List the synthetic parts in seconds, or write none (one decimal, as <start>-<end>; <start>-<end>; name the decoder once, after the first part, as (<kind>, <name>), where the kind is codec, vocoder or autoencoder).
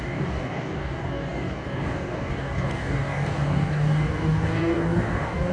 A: 0.0-5.5 (codec, DAC)